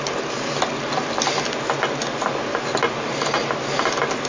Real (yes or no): yes